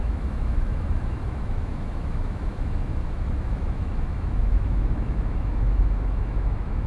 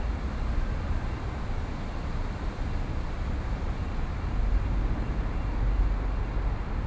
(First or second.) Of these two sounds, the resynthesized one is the first